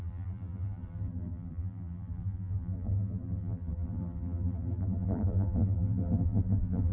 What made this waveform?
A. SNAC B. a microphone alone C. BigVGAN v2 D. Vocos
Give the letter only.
C